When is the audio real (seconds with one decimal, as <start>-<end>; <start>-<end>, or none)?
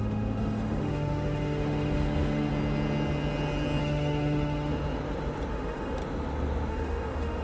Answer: 2.5-3.8; 4.7-5.5; 6.0-6.7